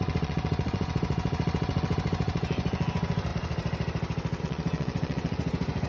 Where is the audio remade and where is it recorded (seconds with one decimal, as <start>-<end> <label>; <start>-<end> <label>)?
0.0-3.3 remade; 3.3-4.4 recorded; 4.4-5.9 remade